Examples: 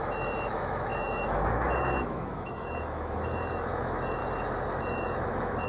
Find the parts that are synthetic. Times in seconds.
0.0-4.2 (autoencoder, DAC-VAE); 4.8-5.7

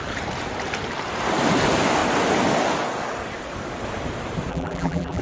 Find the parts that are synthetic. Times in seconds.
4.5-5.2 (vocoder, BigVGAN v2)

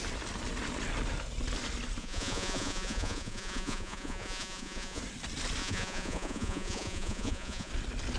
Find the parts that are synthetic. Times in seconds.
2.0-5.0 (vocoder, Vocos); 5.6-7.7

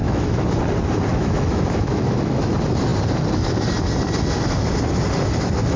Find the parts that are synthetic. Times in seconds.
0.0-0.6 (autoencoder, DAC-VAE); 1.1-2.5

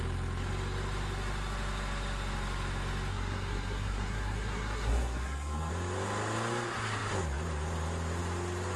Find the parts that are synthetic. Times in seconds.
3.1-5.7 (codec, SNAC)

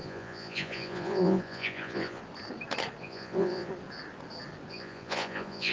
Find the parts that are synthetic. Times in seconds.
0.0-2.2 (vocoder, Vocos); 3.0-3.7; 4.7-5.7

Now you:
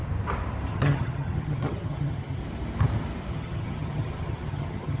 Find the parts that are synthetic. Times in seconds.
0.7-2.4 (vocoder, HiFi-GAN); 3.3-5.0

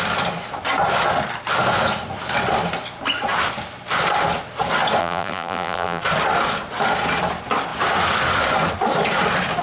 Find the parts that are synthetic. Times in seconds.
5.0-6.0 (vocoder, BigVGAN v2)